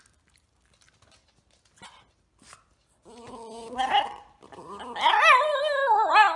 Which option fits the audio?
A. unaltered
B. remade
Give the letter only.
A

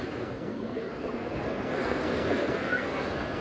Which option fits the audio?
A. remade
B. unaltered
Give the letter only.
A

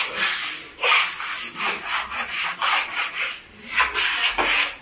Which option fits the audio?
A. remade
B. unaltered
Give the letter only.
B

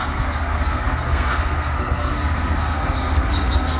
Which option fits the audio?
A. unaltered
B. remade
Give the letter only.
B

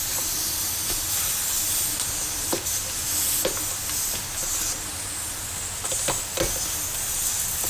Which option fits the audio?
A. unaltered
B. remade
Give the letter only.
A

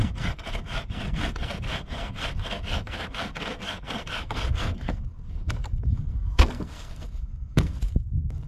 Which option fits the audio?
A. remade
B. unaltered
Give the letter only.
A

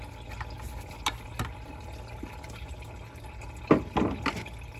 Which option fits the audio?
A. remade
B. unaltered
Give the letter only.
B